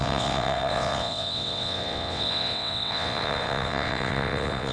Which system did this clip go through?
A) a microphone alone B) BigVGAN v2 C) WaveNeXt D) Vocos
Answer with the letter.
C